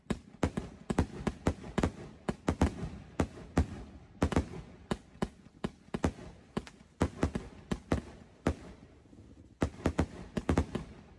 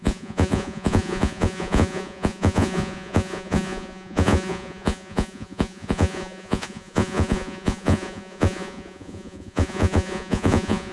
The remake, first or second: second